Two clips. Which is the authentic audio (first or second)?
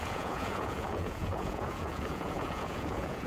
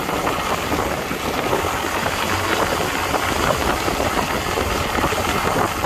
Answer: second